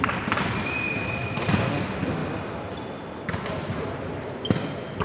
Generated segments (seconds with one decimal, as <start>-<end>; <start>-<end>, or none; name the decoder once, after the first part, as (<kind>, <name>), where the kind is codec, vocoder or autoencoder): none